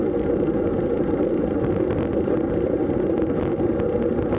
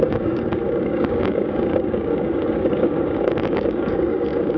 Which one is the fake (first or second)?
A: second